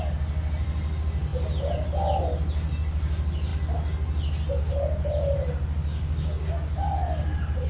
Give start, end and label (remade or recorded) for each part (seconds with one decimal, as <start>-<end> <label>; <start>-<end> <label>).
0.0-5.9 recorded; 5.9-6.5 remade; 6.5-7.7 recorded